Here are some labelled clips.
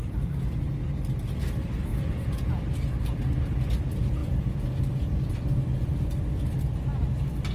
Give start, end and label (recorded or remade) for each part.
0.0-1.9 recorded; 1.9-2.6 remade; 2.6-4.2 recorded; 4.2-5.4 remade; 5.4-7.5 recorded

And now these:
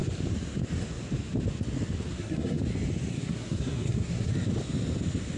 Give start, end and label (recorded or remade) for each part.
0.0-2.1 recorded; 2.1-2.6 remade; 2.6-3.1 recorded; 3.1-4.3 remade; 4.3-5.4 recorded

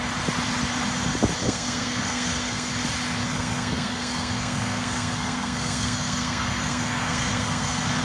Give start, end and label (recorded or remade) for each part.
0.0-1.4 recorded; 1.4-2.7 remade; 2.7-3.2 recorded; 3.2-8.0 remade

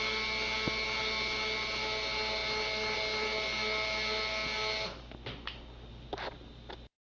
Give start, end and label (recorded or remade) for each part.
0.0-7.1 recorded